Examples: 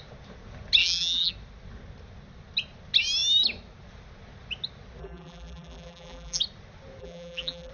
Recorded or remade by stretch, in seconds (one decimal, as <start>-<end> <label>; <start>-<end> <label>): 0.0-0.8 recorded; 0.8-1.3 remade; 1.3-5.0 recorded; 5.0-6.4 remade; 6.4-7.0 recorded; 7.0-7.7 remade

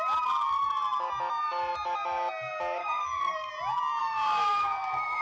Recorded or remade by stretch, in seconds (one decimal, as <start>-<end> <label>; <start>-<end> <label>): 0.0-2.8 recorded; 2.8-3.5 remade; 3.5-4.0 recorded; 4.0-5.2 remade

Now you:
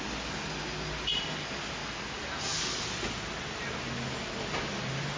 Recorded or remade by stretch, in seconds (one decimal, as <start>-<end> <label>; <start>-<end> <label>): 0.0-5.2 recorded